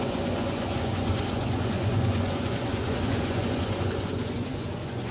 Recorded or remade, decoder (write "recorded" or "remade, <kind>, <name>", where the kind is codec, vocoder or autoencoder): remade, vocoder, Vocos